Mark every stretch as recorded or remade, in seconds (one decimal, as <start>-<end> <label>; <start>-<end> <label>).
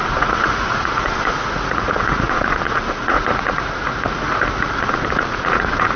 0.0-6.0 remade